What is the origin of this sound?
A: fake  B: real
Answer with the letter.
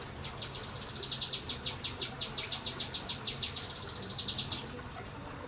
B